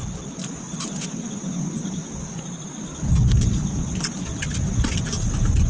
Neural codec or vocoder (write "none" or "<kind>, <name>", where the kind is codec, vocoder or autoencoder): none